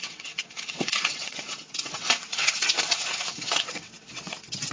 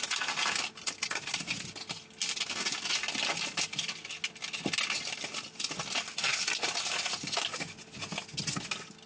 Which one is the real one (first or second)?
second